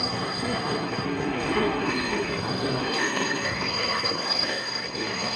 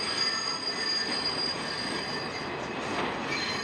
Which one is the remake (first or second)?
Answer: first